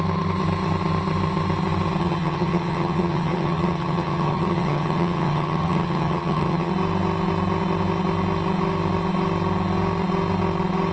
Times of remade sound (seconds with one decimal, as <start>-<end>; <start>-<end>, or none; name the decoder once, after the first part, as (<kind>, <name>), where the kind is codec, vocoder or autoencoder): 2.0-6.7 (vocoder, HiFi-GAN)